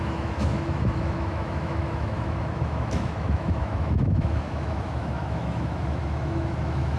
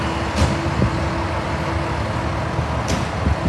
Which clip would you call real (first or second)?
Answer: second